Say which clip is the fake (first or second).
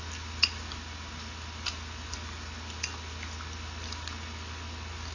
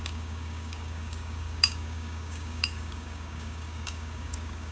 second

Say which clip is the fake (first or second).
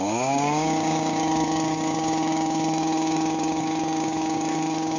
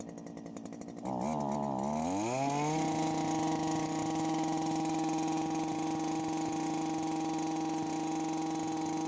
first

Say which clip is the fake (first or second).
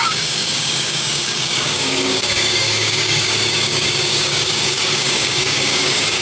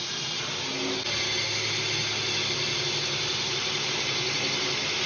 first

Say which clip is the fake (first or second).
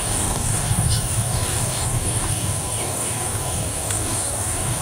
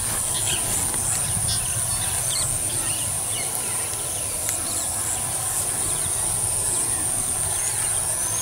first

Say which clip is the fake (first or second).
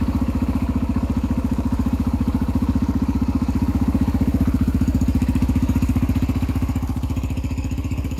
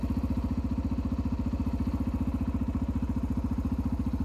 first